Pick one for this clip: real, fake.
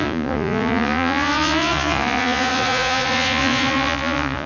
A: fake